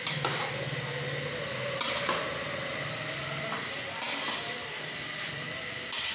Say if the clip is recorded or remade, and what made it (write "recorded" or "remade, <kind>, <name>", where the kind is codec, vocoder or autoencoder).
recorded